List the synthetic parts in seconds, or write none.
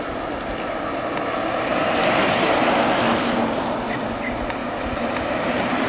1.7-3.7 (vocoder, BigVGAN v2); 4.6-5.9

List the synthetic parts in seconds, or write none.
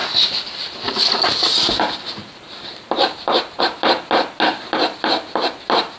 0.0-3.6 (vocoder, BigVGAN v2)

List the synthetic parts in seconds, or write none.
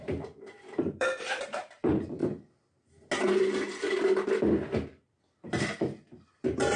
0.0-2.2 (vocoder, BigVGAN v2); 6.3-6.8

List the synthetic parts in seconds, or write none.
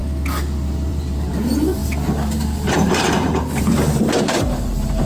0.9-5.0 (vocoder, BigVGAN v2)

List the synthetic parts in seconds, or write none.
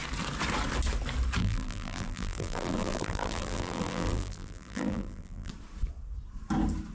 1.4-5.5 (vocoder, BigVGAN v2)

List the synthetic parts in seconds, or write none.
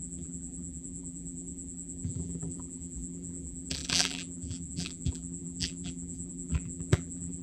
0.0-7.4 (vocoder, BigVGAN v2)